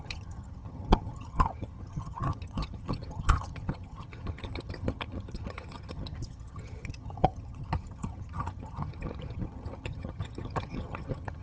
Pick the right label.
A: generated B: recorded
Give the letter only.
A